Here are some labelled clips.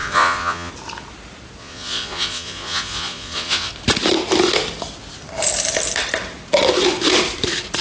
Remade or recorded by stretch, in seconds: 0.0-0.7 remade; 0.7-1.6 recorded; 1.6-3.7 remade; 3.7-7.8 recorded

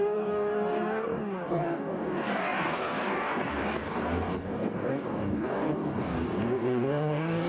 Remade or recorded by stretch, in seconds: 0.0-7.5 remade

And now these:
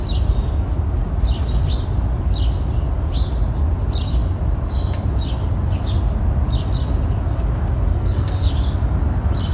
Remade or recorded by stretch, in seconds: 0.0-7.9 recorded; 7.9-8.5 remade; 8.5-9.5 recorded

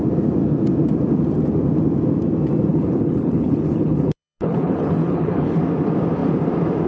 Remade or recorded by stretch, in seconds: 0.0-2.7 recorded; 2.7-5.6 remade; 5.6-6.9 recorded

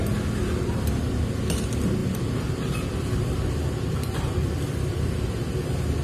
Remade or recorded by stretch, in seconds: 0.0-2.0 recorded; 2.0-5.2 remade; 5.2-6.0 recorded

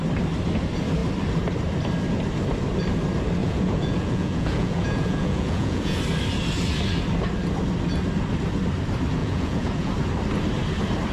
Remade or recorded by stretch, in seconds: 0.0-3.4 recorded; 3.4-6.0 remade; 6.0-9.2 recorded; 9.2-9.9 remade; 9.9-11.1 recorded

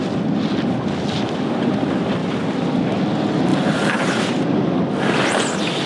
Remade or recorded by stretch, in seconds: 0.0-3.5 recorded; 3.5-4.0 remade; 4.0-5.9 recorded

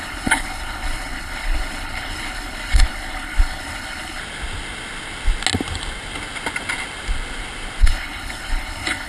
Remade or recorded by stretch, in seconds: 0.0-4.2 remade; 4.2-7.8 recorded; 7.8-9.1 remade